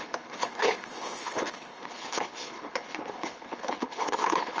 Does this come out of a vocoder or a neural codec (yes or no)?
yes